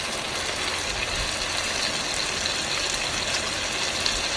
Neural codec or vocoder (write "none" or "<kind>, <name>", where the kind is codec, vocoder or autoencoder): none